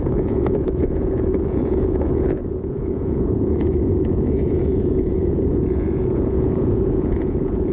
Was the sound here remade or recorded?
remade